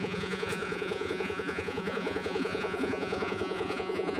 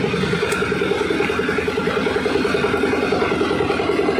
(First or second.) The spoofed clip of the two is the first